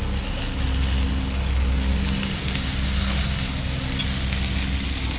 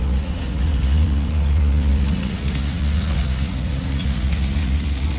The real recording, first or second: first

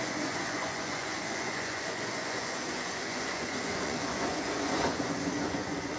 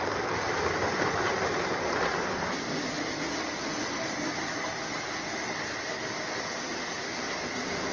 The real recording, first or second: second